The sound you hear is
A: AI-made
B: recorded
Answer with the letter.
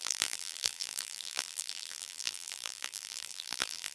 A